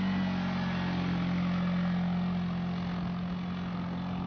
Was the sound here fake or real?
real